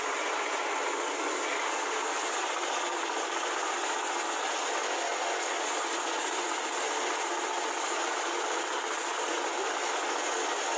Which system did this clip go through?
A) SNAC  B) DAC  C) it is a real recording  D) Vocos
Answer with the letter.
C